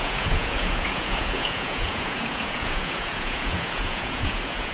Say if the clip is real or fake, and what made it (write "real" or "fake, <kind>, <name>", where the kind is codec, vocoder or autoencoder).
fake, vocoder, Vocos